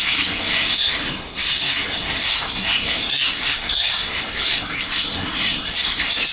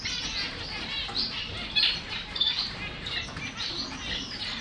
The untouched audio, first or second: second